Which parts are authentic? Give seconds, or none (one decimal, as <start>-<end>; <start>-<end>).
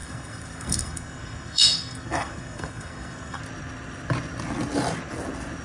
3.4-5.6